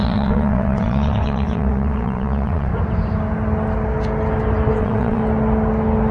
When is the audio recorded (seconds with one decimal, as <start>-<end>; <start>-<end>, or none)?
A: 2.7-4.8; 5.2-6.1